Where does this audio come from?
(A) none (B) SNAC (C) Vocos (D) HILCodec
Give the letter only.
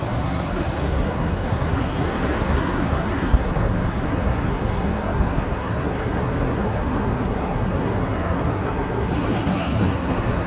B